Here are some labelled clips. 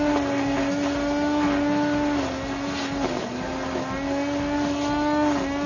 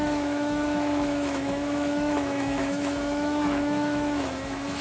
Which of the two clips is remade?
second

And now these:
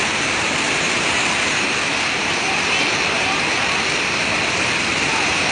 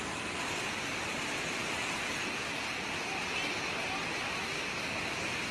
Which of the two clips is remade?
first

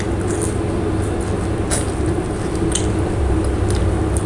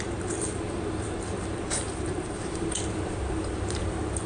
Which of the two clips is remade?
second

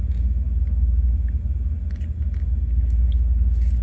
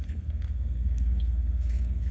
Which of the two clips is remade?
second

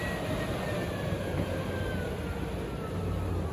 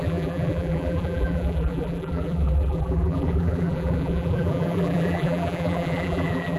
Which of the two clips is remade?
second